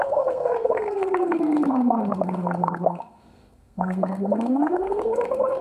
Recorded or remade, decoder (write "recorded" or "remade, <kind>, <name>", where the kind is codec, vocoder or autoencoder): remade, codec, SNAC